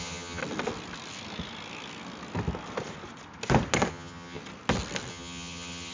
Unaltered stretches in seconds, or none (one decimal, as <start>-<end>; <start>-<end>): 0.4-3.9; 4.4-5.1